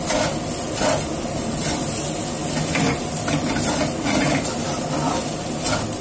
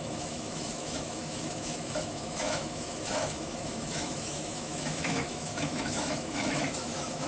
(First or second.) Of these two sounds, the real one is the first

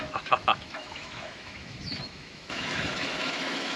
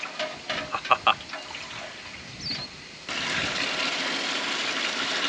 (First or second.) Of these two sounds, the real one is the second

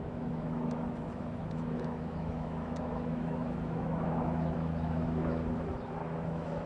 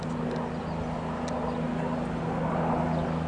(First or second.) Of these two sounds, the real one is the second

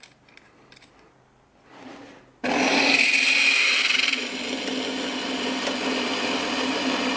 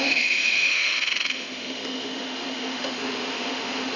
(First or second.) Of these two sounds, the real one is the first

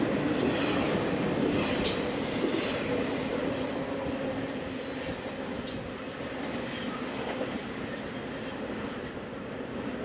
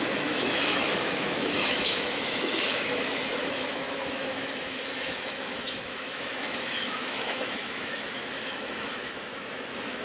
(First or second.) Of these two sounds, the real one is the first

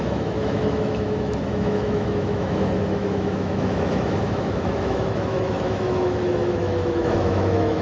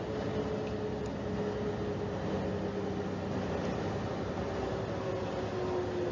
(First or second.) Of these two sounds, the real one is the second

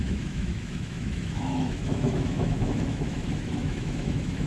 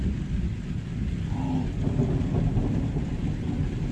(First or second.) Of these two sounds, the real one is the second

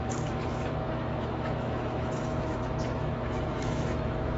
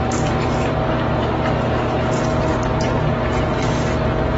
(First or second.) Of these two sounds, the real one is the second